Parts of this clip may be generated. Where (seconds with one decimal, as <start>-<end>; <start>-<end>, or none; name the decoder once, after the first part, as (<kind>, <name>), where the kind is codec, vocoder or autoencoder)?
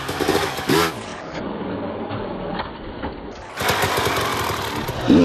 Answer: 0.0-2.7 (codec, DAC)